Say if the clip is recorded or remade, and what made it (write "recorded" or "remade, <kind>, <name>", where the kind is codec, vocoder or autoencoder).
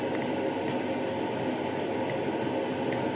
recorded